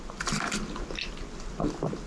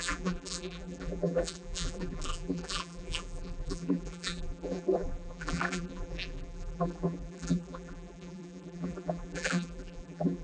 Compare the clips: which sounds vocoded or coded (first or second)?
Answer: second